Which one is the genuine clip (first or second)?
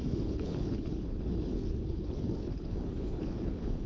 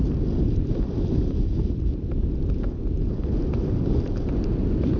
second